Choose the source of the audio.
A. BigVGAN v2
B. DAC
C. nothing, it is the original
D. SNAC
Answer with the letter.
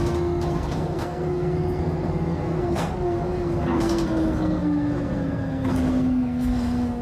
D